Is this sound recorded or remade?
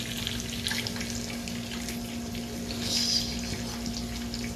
recorded